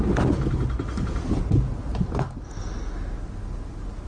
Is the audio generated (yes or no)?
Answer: no